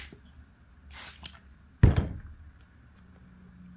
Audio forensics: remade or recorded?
recorded